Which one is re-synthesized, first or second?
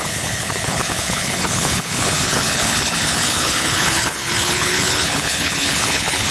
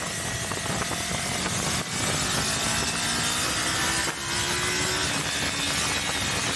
first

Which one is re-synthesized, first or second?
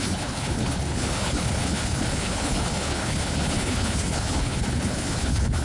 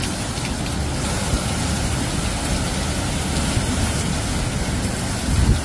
first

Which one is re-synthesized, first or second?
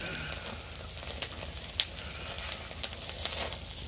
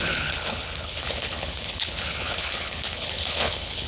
second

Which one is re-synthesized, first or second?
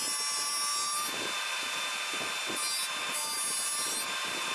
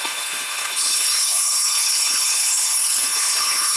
second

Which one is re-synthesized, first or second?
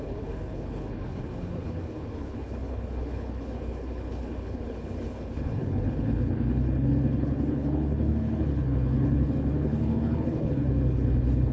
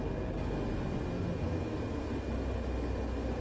first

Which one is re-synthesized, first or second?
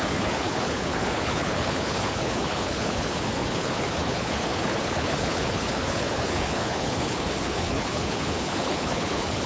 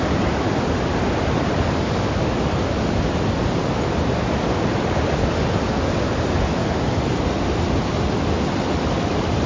first